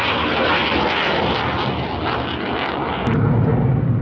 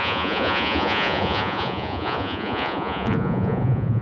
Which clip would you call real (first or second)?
first